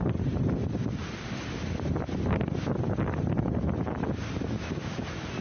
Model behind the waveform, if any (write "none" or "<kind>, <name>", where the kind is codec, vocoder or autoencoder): none